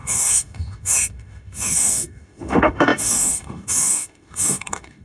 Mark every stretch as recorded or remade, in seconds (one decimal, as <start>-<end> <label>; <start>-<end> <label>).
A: 0.0-5.0 remade